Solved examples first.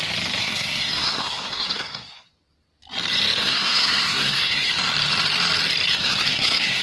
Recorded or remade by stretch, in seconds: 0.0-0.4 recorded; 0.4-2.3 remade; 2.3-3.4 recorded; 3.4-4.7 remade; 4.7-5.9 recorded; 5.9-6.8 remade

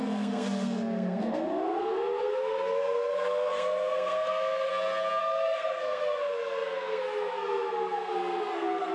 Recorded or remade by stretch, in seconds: 0.0-4.7 remade; 4.7-5.2 recorded; 5.2-8.9 remade

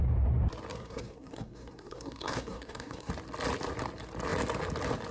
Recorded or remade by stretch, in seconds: 0.0-0.7 recorded; 0.7-3.1 remade; 3.1-5.1 recorded

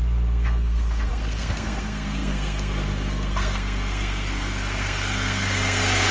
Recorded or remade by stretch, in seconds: 0.0-6.1 remade

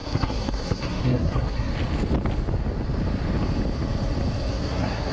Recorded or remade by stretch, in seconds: 0.0-1.7 remade; 1.7-4.5 recorded; 4.5-5.1 remade